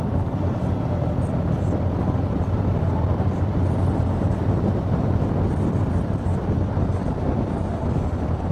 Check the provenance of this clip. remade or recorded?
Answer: remade